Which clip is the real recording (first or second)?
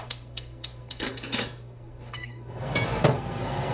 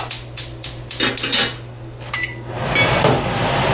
second